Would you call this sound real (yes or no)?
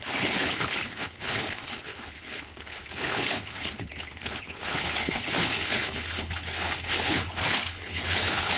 no